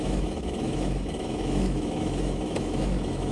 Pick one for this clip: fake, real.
fake